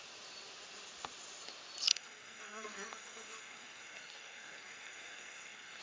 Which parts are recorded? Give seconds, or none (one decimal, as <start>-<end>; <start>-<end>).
0.0-1.9